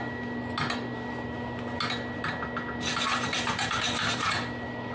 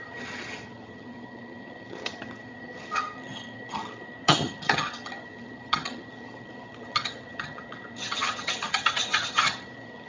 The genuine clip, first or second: first